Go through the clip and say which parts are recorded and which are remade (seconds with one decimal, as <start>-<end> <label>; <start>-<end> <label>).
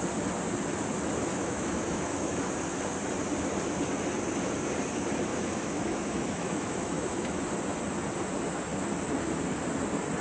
0.0-1.3 recorded; 1.3-2.4 remade; 2.4-5.3 recorded; 5.3-7.4 remade; 7.4-10.2 recorded